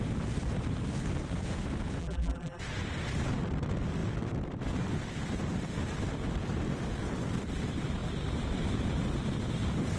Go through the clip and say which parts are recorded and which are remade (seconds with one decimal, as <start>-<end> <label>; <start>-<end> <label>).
0.0-2.0 recorded; 2.0-2.6 remade; 2.6-10.0 recorded